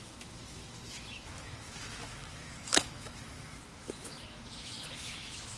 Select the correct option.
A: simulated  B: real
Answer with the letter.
A